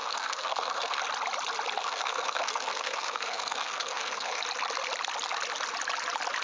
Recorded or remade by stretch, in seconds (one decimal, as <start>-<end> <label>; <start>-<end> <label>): 0.0-1.0 remade; 1.0-1.8 recorded; 1.8-4.4 remade; 4.4-6.4 recorded